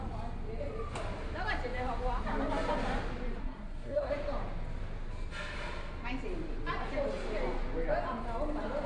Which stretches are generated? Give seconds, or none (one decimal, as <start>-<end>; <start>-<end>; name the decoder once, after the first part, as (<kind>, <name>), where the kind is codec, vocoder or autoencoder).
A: 3.4-4.1 (codec, SNAC)